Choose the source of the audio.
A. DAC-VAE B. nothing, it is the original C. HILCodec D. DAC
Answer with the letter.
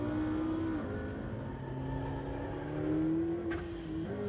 B